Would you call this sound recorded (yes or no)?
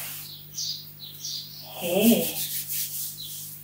yes